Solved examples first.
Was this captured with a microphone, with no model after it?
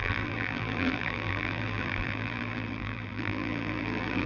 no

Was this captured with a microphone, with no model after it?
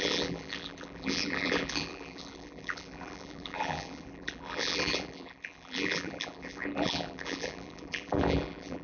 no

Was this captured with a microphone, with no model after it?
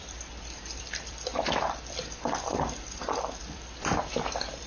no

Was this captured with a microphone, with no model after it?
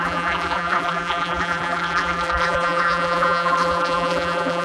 no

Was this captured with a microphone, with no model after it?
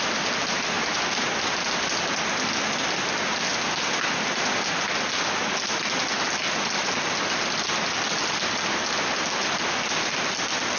yes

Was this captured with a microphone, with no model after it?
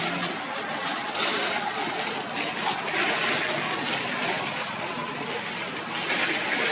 yes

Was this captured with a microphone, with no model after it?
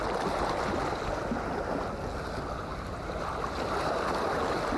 yes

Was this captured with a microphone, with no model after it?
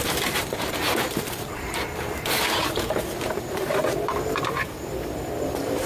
no